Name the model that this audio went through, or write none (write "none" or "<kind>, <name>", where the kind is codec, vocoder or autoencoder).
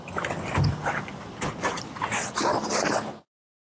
none